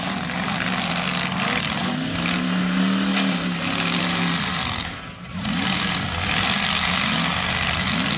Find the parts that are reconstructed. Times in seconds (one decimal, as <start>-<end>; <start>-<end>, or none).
none